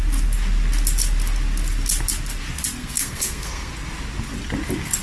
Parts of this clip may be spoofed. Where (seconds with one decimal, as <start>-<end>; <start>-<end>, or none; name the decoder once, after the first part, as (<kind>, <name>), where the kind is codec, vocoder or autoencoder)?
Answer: 2.8-3.7 (codec, SNAC)